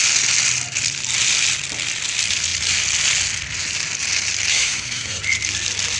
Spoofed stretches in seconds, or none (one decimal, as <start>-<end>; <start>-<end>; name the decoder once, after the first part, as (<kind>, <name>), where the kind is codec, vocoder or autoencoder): 4.5-5.2 (codec, SNAC)